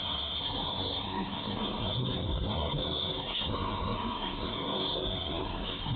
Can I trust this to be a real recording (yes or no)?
no